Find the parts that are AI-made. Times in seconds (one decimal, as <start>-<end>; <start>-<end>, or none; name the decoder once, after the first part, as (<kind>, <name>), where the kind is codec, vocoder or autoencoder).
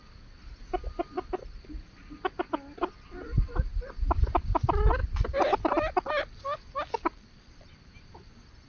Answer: 5.0-6.1 (vocoder, BigVGAN v2)